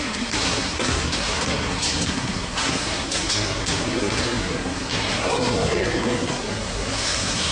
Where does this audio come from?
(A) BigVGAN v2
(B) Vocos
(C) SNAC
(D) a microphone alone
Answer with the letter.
C